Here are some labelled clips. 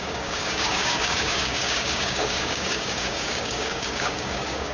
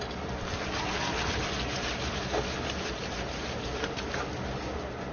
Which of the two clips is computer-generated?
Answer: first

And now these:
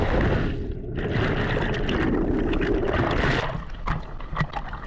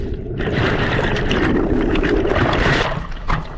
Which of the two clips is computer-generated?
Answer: second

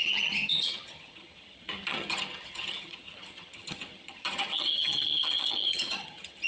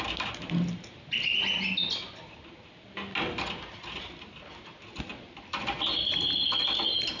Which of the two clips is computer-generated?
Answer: first